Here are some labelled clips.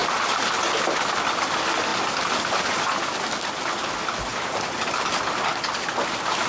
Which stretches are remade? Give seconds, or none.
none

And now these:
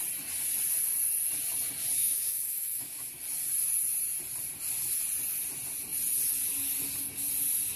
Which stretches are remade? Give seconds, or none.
2.0-3.1 (autoencoder, DAC-VAE)

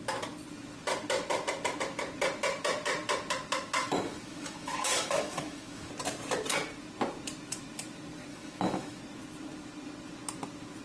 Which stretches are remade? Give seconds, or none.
3.8-5.9 (autoencoder, DAC-VAE); 8.3-9.0

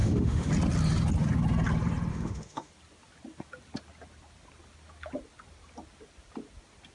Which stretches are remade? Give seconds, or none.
0.0-0.5 (autoencoder, DAC-VAE); 2.1-2.7

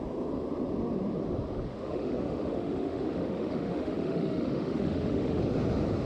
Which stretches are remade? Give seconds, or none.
1.7-5.4 (autoencoder, DAC-VAE)